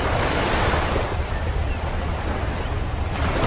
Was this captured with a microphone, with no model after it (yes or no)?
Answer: yes